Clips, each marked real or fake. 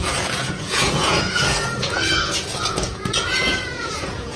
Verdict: fake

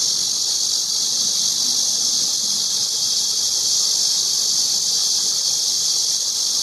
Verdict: real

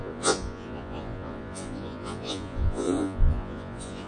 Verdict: fake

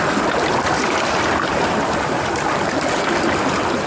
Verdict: real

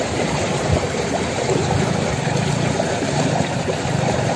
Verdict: real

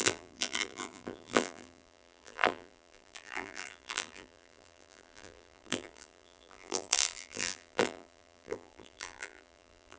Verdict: fake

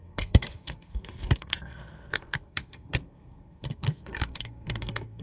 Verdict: fake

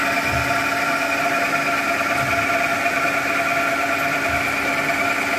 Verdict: real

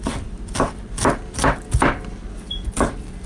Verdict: real